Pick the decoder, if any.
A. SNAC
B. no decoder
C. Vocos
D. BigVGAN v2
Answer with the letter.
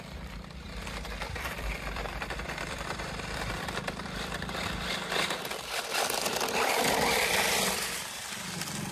D